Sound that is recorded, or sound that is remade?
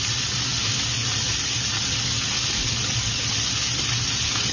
recorded